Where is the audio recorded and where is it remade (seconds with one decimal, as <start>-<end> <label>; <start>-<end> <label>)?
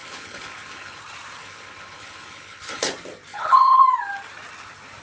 0.0-1.0 remade; 1.0-1.4 recorded; 1.4-2.9 remade; 2.9-3.3 recorded; 3.3-3.8 remade; 3.8-5.0 recorded